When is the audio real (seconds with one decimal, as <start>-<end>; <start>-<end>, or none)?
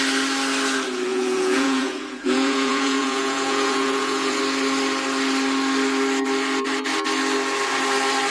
0.0-1.1; 4.4-8.3